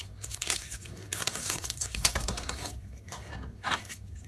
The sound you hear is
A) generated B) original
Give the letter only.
A